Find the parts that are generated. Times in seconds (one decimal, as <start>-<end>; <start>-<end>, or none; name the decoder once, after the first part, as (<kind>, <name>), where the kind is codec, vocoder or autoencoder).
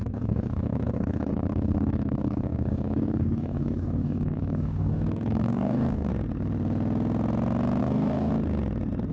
0.0-6.1 (codec, DAC); 7.8-8.3